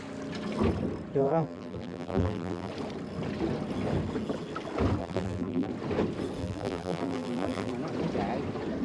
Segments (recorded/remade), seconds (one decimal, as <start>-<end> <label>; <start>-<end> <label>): 0.0-1.2 recorded; 1.2-2.7 remade; 2.7-5.0 recorded; 5.0-5.7 remade; 5.7-6.4 recorded; 6.4-7.7 remade; 7.7-8.8 recorded